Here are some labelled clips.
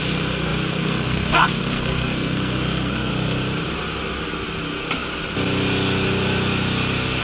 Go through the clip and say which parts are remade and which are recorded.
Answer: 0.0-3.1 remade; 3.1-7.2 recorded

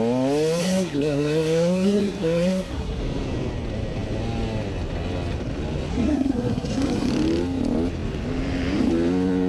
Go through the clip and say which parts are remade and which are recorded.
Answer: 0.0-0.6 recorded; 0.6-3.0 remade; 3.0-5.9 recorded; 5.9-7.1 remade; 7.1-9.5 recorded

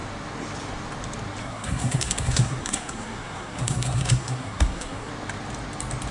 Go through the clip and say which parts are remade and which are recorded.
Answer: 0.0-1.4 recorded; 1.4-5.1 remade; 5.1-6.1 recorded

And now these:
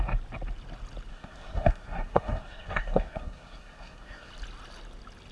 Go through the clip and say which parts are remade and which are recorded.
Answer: 0.0-1.1 recorded; 1.1-4.3 remade; 4.3-5.3 recorded

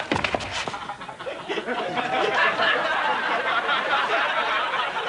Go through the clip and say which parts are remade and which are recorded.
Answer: 0.0-5.1 recorded

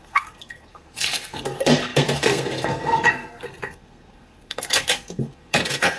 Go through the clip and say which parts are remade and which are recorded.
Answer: 0.0-6.0 remade